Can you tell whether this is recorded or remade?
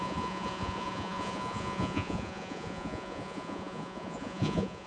remade